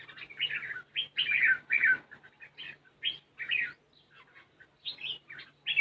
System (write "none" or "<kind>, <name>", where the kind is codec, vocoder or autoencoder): none